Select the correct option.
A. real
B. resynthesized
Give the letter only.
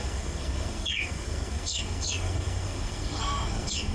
B